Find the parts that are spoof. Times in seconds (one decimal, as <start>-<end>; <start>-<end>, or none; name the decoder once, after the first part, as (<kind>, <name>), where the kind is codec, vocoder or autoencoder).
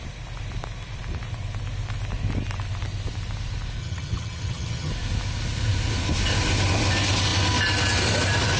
3.8-4.9 (vocoder, HiFi-GAN)